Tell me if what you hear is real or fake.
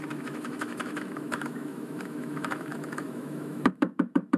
fake